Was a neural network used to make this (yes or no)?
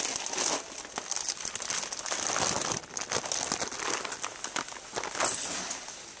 no